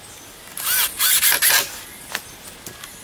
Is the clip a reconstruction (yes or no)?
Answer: no